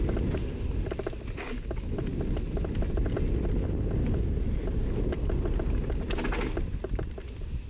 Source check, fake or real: real